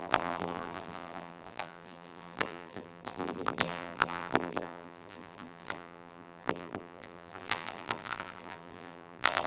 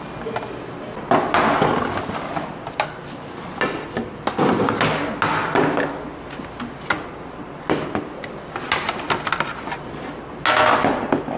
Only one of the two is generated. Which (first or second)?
first